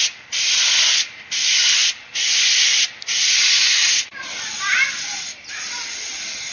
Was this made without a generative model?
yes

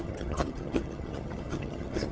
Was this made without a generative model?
no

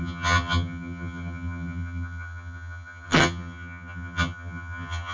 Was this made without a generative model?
no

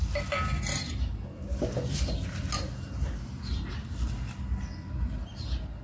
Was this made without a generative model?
yes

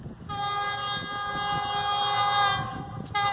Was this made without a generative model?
yes